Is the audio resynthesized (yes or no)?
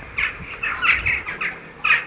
no